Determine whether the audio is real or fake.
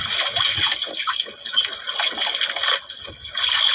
real